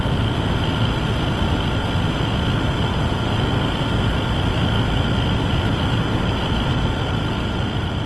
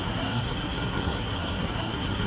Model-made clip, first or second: second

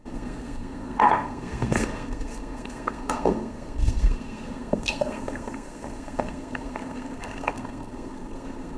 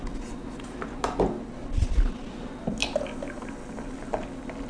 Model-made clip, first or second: first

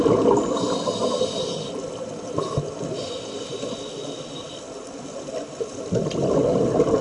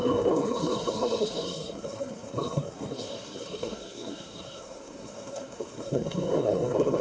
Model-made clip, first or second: second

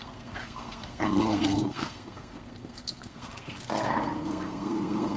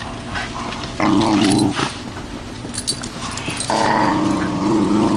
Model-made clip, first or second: first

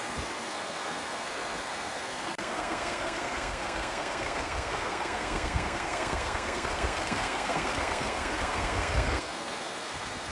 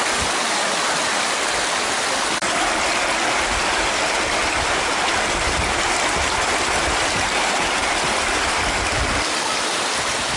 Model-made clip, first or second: first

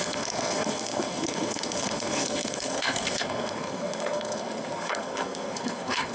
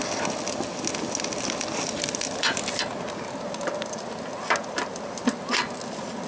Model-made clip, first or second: first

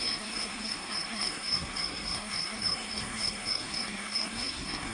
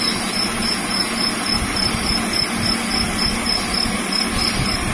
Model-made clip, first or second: first